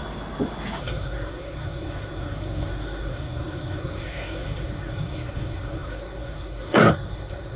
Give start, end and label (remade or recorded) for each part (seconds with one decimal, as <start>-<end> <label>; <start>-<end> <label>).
0.0-0.8 recorded; 0.8-7.6 remade

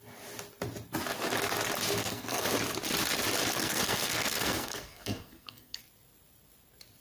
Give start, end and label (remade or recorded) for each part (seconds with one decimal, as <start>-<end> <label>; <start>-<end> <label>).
0.0-2.0 recorded; 2.0-2.5 remade; 2.5-3.6 recorded; 3.6-5.8 remade; 5.8-7.0 recorded

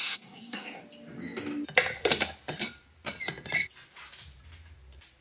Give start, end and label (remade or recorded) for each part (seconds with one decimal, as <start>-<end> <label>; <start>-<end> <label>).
0.0-0.8 remade; 0.8-5.2 recorded